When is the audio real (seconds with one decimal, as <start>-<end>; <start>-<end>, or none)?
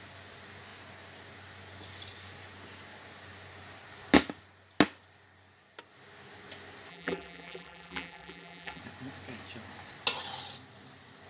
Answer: 0.0-6.9; 8.8-11.3